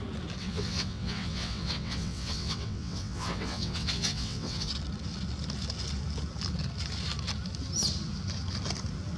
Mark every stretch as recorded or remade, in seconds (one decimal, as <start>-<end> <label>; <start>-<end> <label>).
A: 0.0-0.4 recorded; 0.4-4.7 remade; 4.7-9.2 recorded

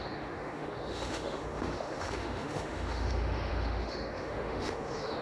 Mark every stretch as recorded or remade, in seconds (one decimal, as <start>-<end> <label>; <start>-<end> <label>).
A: 0.0-5.2 remade

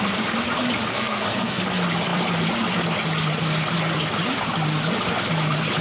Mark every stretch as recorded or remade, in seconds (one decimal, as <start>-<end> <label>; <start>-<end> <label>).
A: 0.0-0.9 recorded; 0.9-1.6 remade; 1.6-5.8 recorded

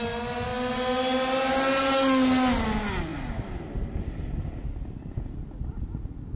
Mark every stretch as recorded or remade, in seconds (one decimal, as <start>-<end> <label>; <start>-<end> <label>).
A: 0.0-6.4 recorded

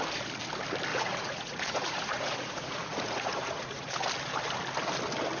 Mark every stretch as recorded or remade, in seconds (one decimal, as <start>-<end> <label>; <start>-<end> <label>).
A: 0.0-0.9 recorded; 0.9-4.1 remade; 4.1-5.4 recorded

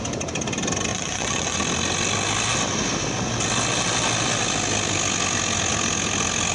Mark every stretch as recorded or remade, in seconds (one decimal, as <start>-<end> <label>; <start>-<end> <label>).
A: 0.0-0.9 recorded; 0.9-1.6 remade; 1.6-6.5 recorded

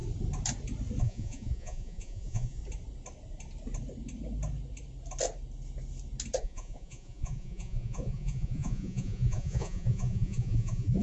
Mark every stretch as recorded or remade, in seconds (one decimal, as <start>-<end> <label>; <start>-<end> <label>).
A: 0.0-1.0 recorded; 1.0-2.6 remade; 2.6-6.4 recorded; 6.4-11.0 remade